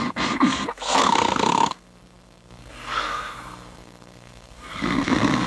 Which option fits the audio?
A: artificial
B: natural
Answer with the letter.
A